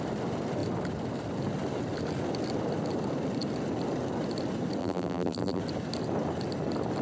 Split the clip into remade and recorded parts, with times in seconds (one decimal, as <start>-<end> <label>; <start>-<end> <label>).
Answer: 0.0-4.8 recorded; 4.8-5.6 remade; 5.6-7.0 recorded